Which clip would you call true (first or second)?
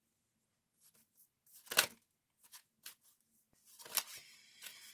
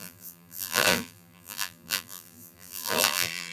first